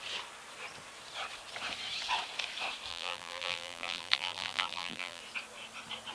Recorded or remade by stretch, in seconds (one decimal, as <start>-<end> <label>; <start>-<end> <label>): 0.0-2.9 recorded; 2.9-5.2 remade; 5.2-6.1 recorded